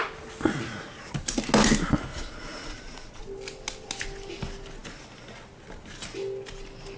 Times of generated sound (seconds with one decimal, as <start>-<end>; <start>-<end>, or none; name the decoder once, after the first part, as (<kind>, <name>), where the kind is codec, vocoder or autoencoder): 2.1-3.2 (vocoder, Vocos)